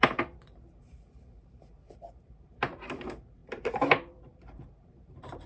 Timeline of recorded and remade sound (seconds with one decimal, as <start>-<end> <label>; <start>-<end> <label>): 0.0-5.5 remade